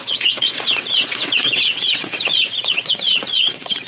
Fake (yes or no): yes